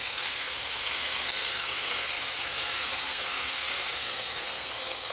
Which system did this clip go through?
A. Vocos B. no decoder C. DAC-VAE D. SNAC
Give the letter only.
D